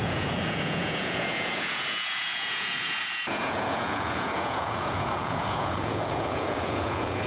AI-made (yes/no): yes